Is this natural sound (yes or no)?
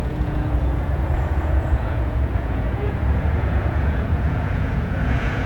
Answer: no